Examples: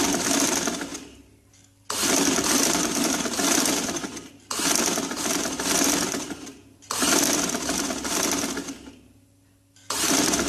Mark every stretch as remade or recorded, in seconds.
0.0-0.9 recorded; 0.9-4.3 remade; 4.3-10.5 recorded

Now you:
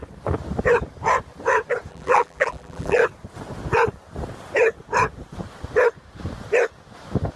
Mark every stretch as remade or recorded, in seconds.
0.0-1.9 recorded; 1.9-3.0 remade; 3.0-7.4 recorded

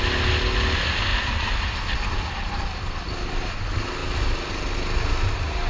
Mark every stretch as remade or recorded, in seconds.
0.0-1.1 recorded; 1.1-2.4 remade; 2.4-5.7 recorded

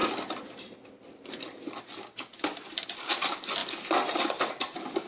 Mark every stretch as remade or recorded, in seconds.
0.0-3.1 remade; 3.1-3.6 recorded; 3.6-4.5 remade; 4.5-5.1 recorded

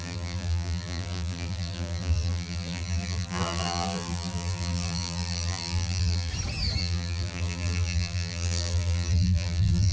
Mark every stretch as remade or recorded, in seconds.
0.0-6.3 remade; 6.3-6.8 recorded; 6.8-9.9 remade

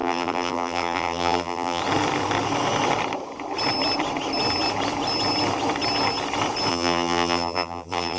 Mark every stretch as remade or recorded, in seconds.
0.0-1.8 remade; 1.8-6.7 recorded; 6.7-8.2 remade

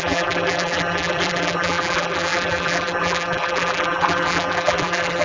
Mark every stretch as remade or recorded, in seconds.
0.0-5.2 remade